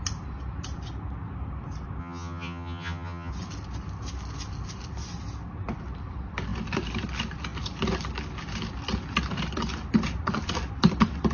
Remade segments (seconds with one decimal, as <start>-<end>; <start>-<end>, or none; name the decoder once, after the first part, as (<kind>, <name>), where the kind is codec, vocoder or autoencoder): 2.0-3.3 (vocoder, HiFi-GAN)